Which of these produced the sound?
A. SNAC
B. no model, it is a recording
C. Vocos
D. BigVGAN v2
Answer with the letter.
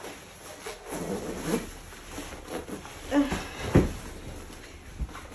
B